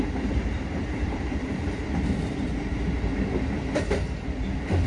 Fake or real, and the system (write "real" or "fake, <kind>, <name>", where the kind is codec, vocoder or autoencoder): fake, vocoder, BigVGAN v2